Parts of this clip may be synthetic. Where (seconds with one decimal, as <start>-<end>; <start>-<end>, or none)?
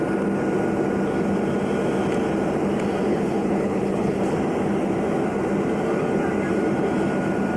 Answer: 3.1-4.2